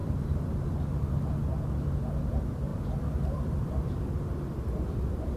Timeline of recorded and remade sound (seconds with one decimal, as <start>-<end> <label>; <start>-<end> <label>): 0.0-1.1 remade; 1.1-2.7 recorded; 2.7-4.1 remade; 4.1-5.4 recorded